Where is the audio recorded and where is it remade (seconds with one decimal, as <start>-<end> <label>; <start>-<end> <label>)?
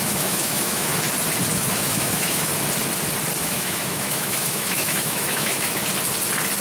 0.0-0.9 remade; 0.9-1.5 recorded; 1.5-2.5 remade; 2.5-3.4 recorded; 3.4-5.8 remade; 5.8-6.6 recorded